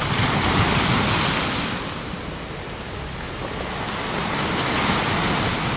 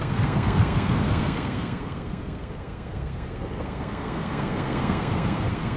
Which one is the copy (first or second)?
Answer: second